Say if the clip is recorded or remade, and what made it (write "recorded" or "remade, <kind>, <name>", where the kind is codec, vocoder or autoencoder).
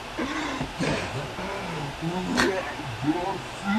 remade, vocoder, BigVGAN v2